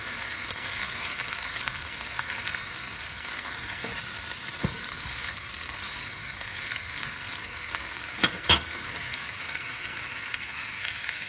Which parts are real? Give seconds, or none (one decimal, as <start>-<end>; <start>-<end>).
3.9-4.6